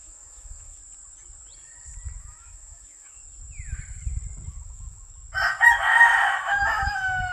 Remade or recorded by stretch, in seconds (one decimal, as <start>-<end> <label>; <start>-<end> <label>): 0.0-0.8 remade; 0.8-2.2 recorded; 2.2-3.2 remade; 3.2-4.5 recorded; 4.5-5.1 remade; 5.1-6.4 recorded; 6.4-7.3 remade

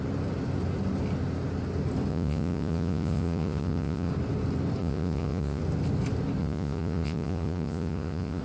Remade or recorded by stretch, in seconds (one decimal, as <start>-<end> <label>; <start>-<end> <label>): 0.0-2.1 recorded; 2.1-4.1 remade; 4.1-4.8 recorded; 4.8-5.6 remade; 5.6-6.4 recorded; 6.4-8.4 remade